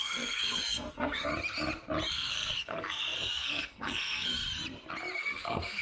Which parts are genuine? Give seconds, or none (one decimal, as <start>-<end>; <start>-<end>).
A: 1.3-2.1; 4.3-5.2